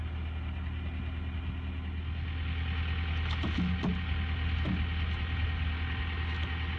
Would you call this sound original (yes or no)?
yes